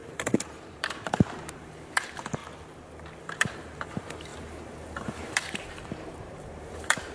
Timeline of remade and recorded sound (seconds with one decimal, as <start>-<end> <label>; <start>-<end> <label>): 0.0-2.4 remade; 2.4-3.2 recorded; 3.2-7.1 remade